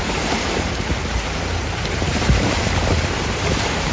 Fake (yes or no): yes